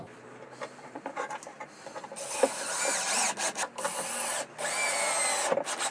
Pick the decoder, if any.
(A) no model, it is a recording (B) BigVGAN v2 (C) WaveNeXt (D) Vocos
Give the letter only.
A